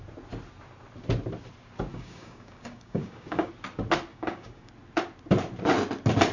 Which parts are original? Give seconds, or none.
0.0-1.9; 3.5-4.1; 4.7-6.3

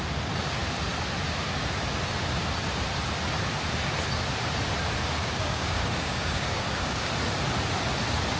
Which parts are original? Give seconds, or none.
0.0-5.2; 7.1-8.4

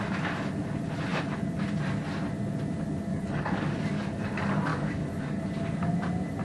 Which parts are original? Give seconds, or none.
0.0-3.1; 4.2-4.7; 5.4-6.4

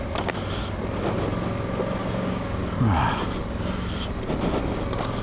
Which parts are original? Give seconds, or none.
0.0-2.0; 2.6-5.2

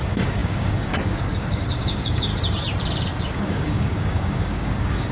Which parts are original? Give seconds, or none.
2.3-3.3

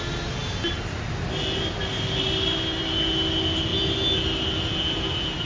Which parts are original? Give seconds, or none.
0.0-5.4

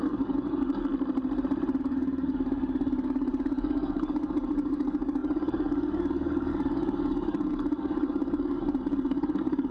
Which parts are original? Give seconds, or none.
0.9-1.8